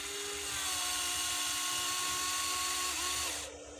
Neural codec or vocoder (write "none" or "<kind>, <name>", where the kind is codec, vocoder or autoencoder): none